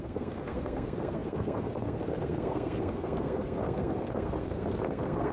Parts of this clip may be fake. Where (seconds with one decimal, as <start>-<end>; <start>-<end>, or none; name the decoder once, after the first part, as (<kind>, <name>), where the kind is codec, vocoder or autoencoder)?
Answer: 0.0-5.3 (codec, SNAC)